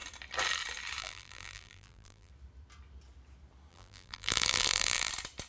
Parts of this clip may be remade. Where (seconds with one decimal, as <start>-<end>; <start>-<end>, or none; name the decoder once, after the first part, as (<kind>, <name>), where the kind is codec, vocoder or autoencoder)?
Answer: 1.0-2.3 (vocoder, BigVGAN v2); 3.7-5.1

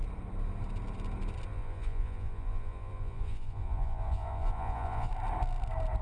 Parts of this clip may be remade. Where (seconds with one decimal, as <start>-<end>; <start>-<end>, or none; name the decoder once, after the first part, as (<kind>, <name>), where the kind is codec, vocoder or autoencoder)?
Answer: 1.5-5.1 (vocoder, Vocos)